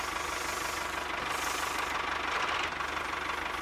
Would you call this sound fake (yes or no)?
no